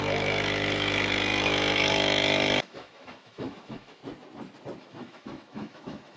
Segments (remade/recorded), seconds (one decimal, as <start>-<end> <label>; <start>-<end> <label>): 0.0-4.0 remade; 4.0-4.8 recorded; 4.8-6.2 remade